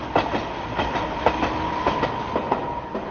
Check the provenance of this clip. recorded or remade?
recorded